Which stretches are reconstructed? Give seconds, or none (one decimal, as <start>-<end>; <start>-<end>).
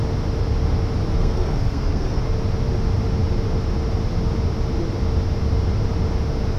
1.2-2.2